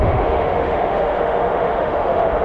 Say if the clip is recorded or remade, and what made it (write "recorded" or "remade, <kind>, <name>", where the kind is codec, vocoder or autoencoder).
remade, autoencoder, DAC-VAE